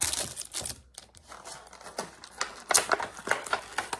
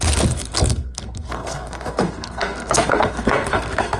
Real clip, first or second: first